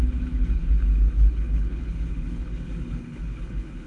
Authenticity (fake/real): fake